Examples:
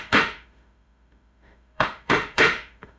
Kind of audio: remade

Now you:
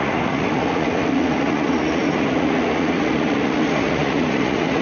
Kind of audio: remade